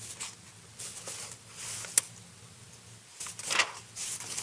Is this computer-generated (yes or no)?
no